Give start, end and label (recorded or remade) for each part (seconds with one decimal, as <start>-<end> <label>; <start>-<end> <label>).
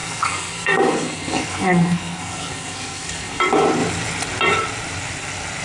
0.0-3.4 remade; 3.4-5.6 recorded